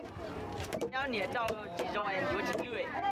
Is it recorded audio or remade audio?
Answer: remade